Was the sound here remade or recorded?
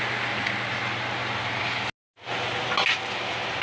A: recorded